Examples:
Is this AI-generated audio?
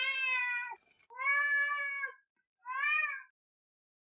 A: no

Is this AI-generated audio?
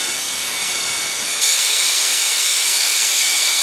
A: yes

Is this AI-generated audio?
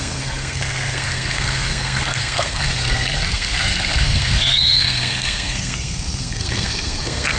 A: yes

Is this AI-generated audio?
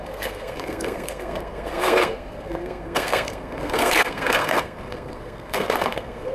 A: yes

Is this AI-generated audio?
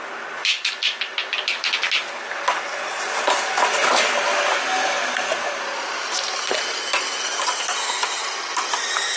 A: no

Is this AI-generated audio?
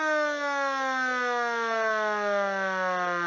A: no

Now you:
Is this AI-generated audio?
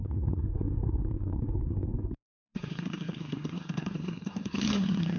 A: yes